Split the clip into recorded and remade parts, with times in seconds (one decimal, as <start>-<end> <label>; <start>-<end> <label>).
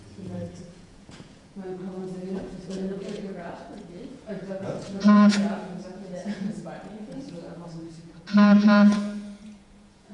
0.0-10.1 remade